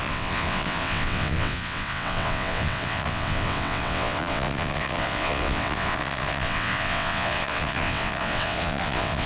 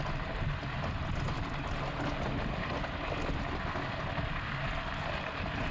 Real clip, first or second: second